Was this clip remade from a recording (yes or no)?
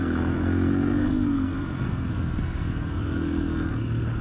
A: yes